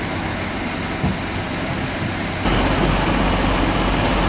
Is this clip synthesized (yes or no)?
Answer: no